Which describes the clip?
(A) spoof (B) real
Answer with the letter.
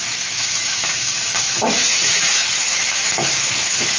A